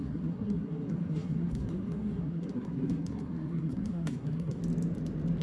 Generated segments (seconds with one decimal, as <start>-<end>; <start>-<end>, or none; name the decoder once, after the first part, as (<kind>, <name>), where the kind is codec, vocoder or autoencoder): 0.0-4.6 (codec, SNAC)